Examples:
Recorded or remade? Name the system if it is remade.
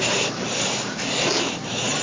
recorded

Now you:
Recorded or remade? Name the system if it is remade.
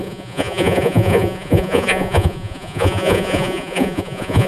remade, vocoder, Vocos